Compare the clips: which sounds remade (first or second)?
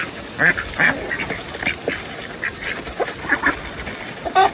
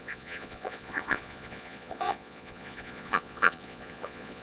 second